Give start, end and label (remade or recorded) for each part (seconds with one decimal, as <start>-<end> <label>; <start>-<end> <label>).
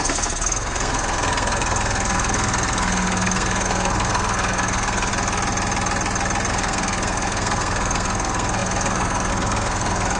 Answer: 0.0-5.1 remade; 5.1-6.5 recorded; 6.5-10.2 remade